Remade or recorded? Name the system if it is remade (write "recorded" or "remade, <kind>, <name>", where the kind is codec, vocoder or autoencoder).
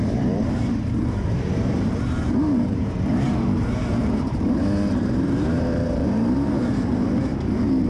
remade, vocoder, BigVGAN v2